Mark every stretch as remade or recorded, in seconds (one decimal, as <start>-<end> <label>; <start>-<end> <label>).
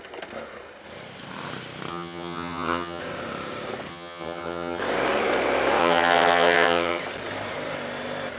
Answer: 0.0-1.9 recorded; 1.9-3.0 remade; 3.0-3.9 recorded; 3.9-4.8 remade; 4.8-5.8 recorded; 5.8-7.0 remade; 7.0-8.4 recorded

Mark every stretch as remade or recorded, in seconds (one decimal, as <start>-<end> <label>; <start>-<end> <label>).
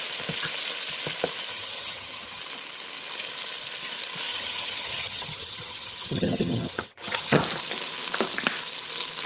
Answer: 0.0-1.5 recorded; 1.5-2.4 remade; 2.4-4.3 recorded; 4.3-7.4 remade; 7.4-9.3 recorded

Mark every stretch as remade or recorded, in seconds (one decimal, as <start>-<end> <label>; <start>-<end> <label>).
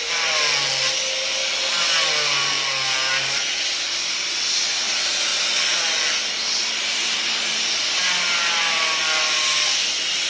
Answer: 0.0-10.3 recorded